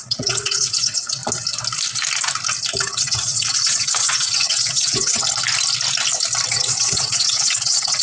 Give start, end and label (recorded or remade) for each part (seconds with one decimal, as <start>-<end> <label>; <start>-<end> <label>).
0.0-1.2 remade; 1.2-2.8 recorded; 2.8-5.2 remade; 5.2-6.5 recorded; 6.5-8.0 remade